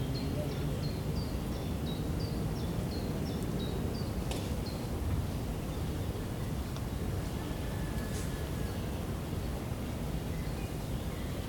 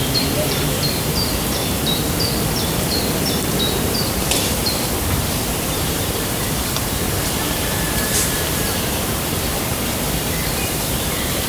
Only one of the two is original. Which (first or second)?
first